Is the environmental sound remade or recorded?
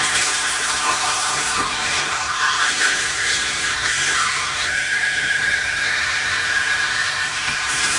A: remade